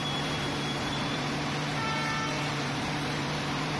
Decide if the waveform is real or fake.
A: fake